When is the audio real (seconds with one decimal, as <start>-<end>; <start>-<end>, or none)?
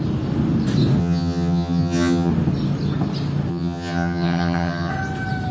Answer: 0.0-1.0; 2.3-3.5; 4.9-5.5